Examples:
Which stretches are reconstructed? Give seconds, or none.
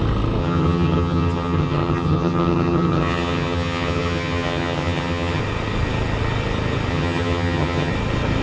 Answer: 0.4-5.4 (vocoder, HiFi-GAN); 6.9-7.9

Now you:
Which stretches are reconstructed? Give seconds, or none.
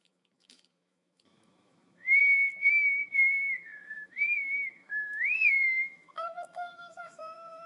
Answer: 0.0-2.2 (autoencoder, DAC-VAE); 2.7-7.7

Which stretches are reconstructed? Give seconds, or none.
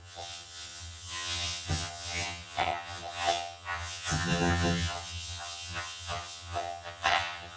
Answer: 0.0-7.6 (vocoder, HiFi-GAN)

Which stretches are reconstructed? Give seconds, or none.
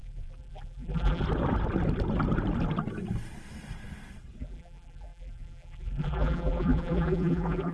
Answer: 0.0-1.2 (vocoder, BigVGAN v2); 4.4-7.7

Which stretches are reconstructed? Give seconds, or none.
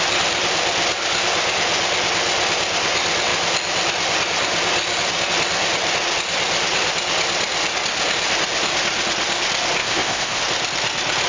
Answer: 9.8-10.4 (codec, ZipCodec)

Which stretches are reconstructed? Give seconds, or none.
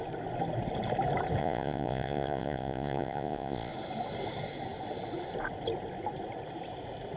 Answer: 1.4-3.7 (vocoder, Vocos)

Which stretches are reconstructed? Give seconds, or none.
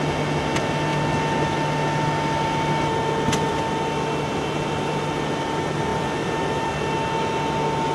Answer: 5.9-6.7 (vocoder, BigVGAN v2)